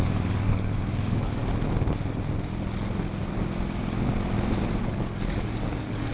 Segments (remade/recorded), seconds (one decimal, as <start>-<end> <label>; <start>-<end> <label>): 0.0-1.4 remade; 1.4-4.8 recorded; 4.8-6.1 remade